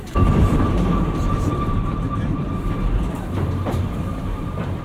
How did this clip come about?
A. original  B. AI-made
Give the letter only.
B